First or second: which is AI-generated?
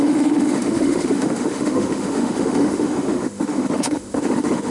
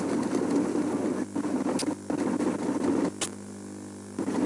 first